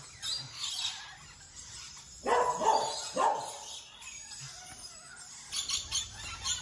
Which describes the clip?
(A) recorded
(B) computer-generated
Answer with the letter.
A